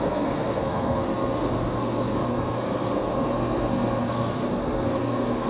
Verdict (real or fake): fake